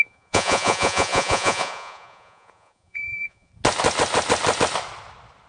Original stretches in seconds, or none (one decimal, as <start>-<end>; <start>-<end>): 3.5-5.5